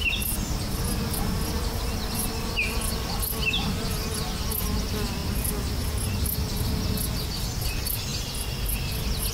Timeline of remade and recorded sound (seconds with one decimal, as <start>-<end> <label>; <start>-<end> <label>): 0.0-9.3 recorded